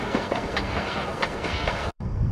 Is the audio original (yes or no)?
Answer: no